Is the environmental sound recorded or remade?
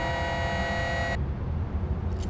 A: recorded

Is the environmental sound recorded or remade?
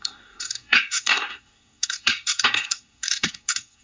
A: remade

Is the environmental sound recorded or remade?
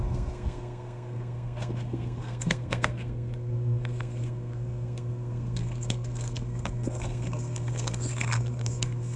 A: remade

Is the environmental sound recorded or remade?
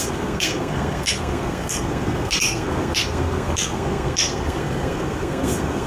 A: remade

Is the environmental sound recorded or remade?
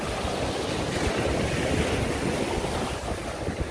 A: recorded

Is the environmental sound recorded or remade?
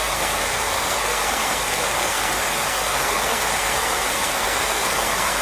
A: remade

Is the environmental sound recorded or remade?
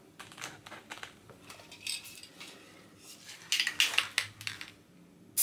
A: recorded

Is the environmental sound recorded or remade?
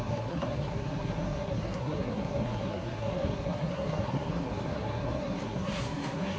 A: remade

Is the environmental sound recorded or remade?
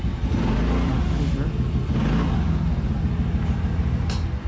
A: recorded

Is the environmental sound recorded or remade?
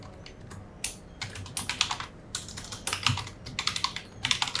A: recorded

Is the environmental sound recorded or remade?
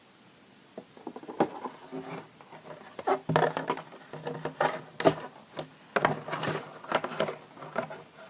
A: recorded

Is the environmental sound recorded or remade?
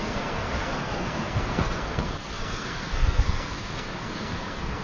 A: remade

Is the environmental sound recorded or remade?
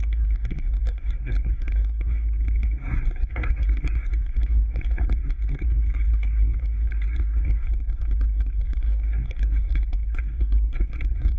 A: remade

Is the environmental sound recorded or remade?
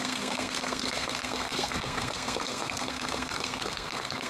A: remade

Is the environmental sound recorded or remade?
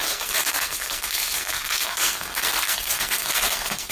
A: remade